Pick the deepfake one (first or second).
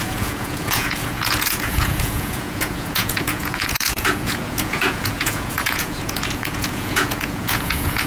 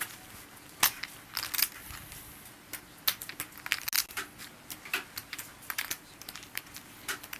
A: first